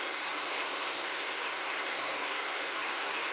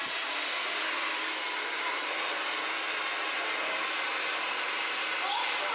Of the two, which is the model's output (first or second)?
first